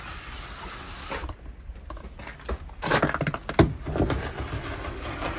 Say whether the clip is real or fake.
real